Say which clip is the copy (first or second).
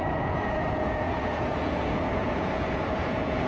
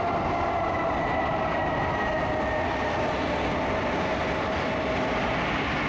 first